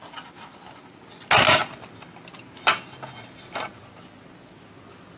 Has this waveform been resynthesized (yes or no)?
no